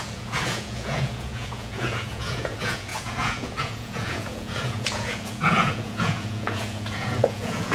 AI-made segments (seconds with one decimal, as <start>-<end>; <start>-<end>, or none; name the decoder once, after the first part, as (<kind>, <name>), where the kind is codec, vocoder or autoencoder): 0.0-7.7 (vocoder, Vocos)